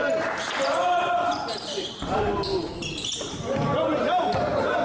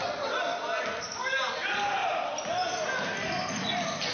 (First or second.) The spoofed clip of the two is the first